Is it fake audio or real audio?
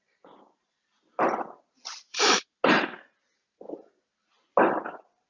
real